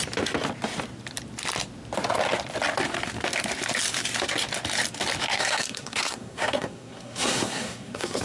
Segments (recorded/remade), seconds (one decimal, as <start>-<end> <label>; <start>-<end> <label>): 0.0-5.3 recorded; 5.3-8.2 remade